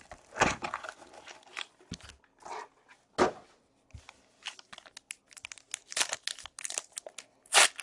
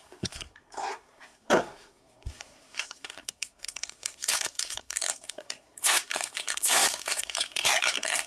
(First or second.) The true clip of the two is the first